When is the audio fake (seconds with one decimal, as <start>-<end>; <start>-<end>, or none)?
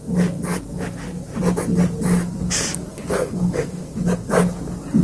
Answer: 2.9-3.9